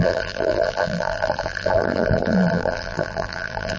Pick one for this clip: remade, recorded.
remade